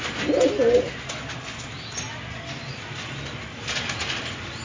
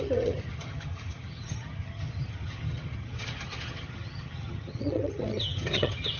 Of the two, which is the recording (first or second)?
first